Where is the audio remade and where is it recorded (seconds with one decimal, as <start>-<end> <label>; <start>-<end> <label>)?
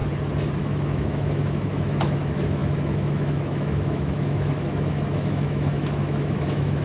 0.0-0.6 recorded; 0.6-6.8 remade